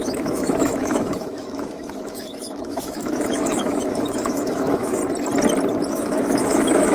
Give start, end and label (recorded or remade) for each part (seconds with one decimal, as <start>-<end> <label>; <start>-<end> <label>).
0.0-5.0 remade; 5.0-5.9 recorded; 5.9-6.9 remade